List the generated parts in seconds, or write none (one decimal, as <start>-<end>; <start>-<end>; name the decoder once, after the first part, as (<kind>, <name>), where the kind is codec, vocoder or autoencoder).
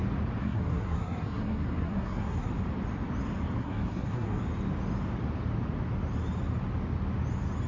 0.4-2.5 (codec, SNAC); 3.6-4.4